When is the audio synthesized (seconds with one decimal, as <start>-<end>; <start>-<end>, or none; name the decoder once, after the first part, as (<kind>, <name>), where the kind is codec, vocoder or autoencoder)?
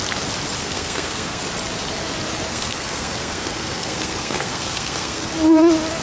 0.6-1.4 (codec, SNAC); 2.5-5.3